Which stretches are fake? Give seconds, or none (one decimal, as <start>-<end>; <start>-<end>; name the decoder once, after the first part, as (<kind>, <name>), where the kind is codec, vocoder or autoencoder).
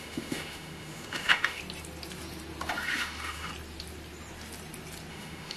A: 0.0-1.6 (autoencoder, DAC-VAE); 2.7-3.5; 5.1-5.6